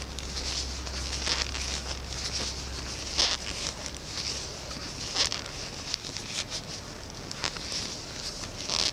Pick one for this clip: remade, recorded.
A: recorded